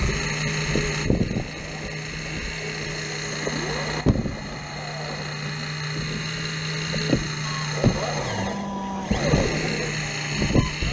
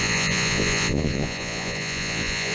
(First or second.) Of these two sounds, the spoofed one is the second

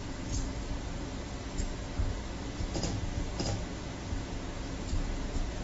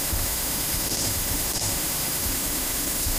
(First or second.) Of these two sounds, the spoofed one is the second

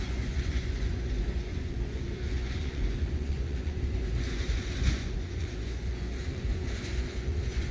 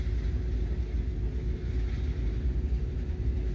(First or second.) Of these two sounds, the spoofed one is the first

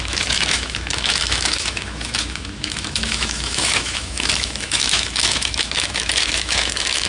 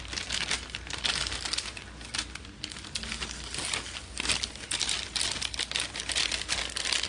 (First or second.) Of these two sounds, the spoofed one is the first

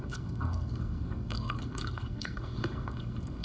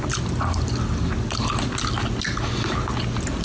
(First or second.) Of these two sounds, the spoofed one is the first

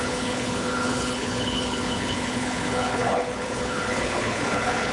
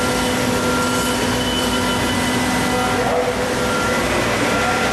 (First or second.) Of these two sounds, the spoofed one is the first